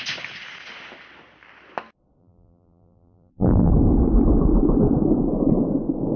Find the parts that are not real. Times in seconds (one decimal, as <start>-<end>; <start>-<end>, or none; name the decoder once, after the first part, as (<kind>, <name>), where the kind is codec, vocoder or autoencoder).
2.2-3.7 (vocoder, BigVGAN v2)